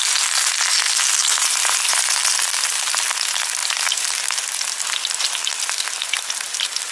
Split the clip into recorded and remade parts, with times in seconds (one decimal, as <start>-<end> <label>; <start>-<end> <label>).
0.0-1.2 recorded; 1.2-3.0 remade; 3.0-3.6 recorded; 3.6-4.8 remade; 4.8-6.9 recorded

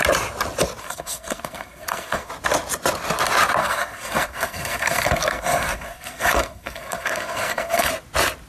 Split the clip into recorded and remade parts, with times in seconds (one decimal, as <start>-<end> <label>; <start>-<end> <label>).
0.0-0.8 recorded; 0.8-2.3 remade; 2.3-3.6 recorded; 3.6-7.9 remade; 7.9-8.5 recorded